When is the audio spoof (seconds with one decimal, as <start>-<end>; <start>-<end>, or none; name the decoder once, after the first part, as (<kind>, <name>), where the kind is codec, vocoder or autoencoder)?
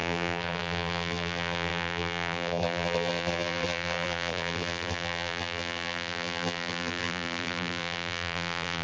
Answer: 0.0-8.8 (vocoder, BigVGAN v2)